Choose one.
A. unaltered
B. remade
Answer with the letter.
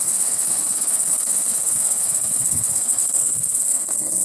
B